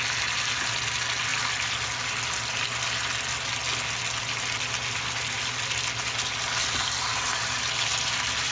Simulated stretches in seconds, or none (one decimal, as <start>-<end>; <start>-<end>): none